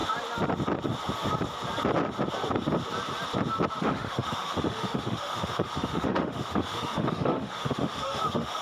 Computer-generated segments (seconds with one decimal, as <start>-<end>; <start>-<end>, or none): 3.8-8.6